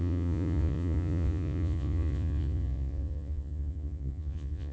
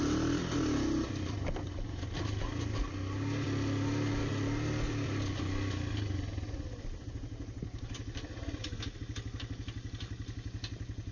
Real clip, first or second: second